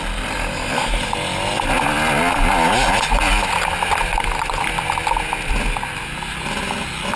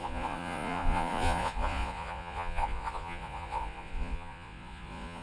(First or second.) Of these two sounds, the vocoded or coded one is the second